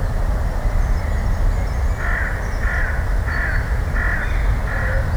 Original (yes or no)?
yes